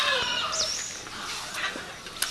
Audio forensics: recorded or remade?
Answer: recorded